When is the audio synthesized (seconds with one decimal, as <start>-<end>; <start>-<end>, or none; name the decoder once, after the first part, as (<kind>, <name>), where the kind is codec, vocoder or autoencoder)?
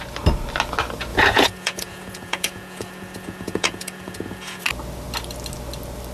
1.1-4.6 (vocoder, Vocos)